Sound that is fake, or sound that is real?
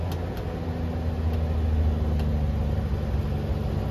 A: real